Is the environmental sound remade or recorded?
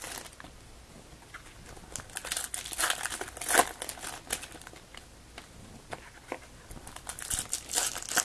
recorded